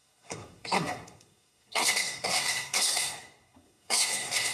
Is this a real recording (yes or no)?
no